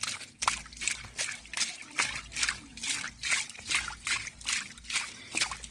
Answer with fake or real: real